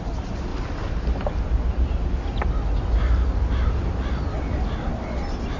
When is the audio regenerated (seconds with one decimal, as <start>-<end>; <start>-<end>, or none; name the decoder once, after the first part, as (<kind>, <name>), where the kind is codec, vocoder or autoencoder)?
none